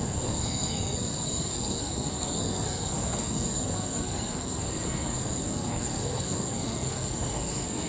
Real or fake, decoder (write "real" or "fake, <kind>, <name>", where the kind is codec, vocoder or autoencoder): fake, codec, SNAC